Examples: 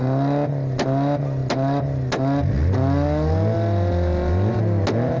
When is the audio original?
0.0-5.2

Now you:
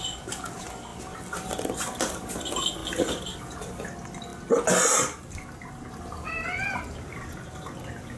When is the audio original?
0.0-8.2